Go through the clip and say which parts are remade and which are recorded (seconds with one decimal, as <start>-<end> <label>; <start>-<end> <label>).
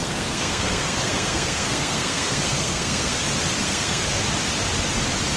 0.0-3.2 remade; 3.2-3.6 recorded; 3.6-4.2 remade; 4.2-5.4 recorded